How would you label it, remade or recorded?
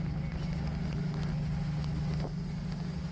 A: recorded